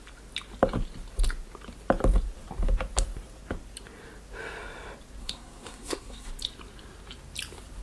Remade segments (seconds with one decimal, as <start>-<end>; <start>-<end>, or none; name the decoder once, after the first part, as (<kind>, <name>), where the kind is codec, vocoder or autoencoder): 5.2-6.3 (codec, SNAC)